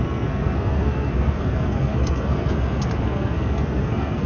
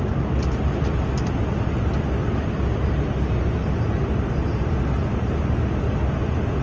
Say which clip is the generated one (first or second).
first